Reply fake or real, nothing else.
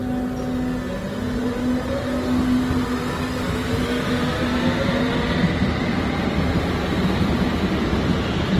real